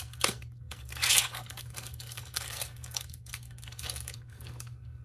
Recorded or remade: remade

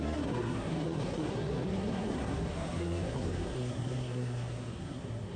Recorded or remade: remade